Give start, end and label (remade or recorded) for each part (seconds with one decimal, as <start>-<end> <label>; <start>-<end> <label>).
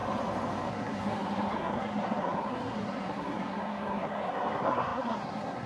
0.0-0.7 recorded; 0.7-5.7 remade